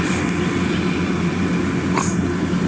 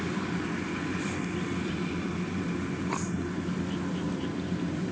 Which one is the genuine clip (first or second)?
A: first